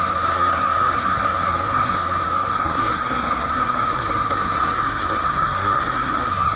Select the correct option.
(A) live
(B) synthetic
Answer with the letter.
B